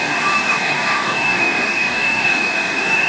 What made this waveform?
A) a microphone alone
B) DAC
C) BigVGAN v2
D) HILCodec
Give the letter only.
B